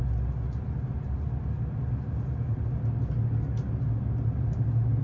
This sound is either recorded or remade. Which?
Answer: recorded